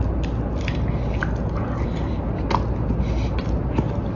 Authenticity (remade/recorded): recorded